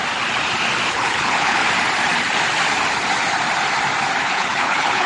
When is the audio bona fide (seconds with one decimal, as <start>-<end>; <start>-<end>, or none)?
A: 0.0-0.9; 1.6-4.2